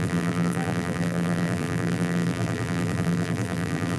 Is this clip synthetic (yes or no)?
yes